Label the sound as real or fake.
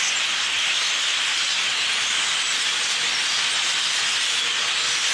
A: real